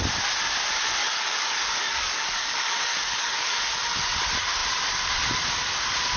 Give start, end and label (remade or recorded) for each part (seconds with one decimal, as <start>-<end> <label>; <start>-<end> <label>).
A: 0.0-1.0 recorded; 1.0-3.6 remade; 3.6-6.2 recorded